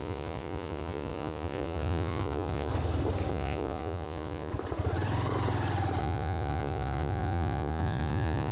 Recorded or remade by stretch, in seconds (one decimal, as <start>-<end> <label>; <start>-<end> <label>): 0.0-2.7 remade; 2.7-3.3 recorded; 3.3-4.5 remade; 4.5-6.0 recorded; 6.0-8.5 remade